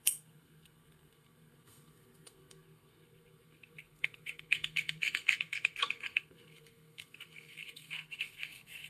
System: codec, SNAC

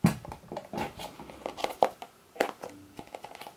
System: none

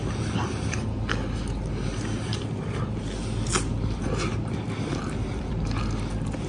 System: none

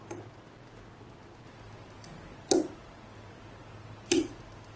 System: none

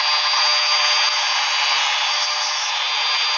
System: none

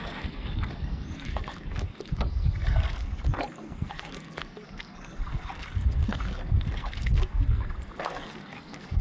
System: codec, SNAC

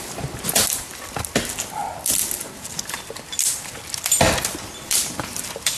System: none